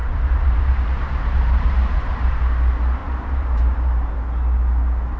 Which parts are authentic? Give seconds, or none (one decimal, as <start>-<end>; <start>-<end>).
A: 2.4-3.0; 4.1-5.2